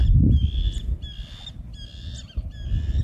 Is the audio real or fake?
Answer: real